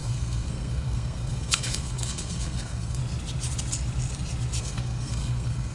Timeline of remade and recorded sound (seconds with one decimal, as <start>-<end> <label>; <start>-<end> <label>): 0.0-3.0 remade; 3.0-4.6 recorded; 4.6-5.7 remade